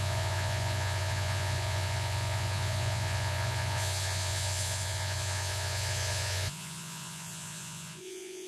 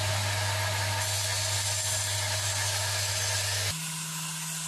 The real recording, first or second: second